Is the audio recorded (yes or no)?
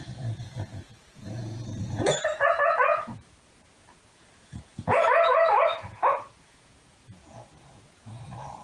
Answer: no